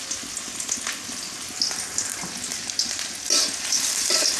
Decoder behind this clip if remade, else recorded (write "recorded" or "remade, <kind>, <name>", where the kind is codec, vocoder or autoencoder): recorded